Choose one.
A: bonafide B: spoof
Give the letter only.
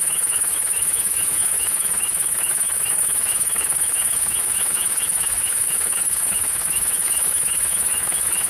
B